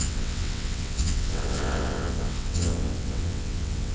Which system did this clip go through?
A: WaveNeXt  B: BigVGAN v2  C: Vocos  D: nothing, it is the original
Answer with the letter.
A